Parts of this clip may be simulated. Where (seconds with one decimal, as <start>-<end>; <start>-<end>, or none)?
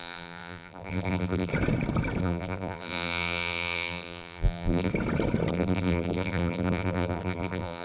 0.0-1.5; 2.2-4.9; 5.5-7.8